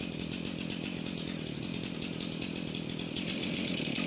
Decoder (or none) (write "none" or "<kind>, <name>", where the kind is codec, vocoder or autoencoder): none